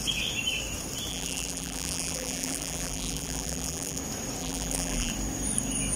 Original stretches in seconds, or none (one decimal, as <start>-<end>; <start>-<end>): 0.0-1.1; 4.0-4.4; 5.1-6.0